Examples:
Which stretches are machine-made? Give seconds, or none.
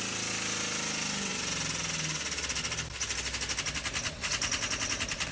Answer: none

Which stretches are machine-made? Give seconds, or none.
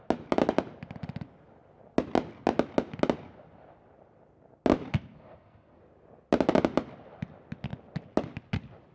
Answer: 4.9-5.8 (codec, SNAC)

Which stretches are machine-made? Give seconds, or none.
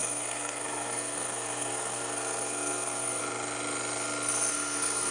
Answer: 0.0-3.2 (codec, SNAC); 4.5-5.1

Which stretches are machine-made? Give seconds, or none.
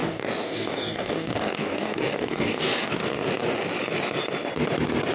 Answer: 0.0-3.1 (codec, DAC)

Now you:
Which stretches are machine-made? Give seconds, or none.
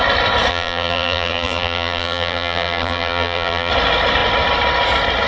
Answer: 0.5-3.7 (vocoder, BigVGAN v2)